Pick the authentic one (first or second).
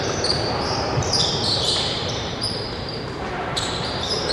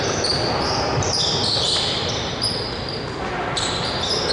second